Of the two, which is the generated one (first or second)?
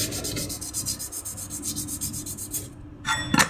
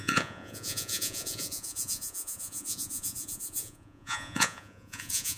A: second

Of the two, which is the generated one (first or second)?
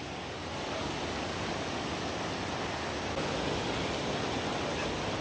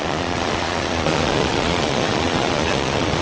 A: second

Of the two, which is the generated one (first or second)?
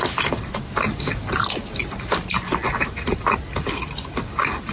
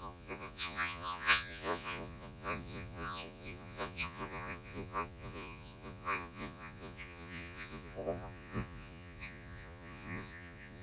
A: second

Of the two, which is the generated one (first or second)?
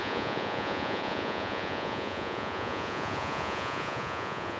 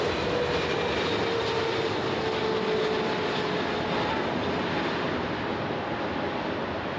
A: first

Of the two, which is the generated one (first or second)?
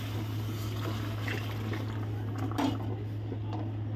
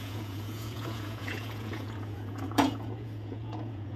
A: second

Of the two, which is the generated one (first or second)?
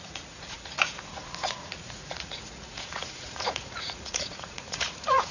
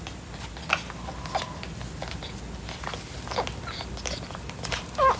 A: first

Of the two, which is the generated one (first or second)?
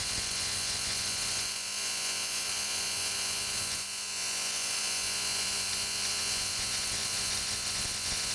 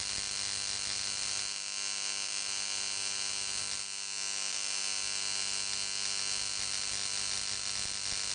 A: first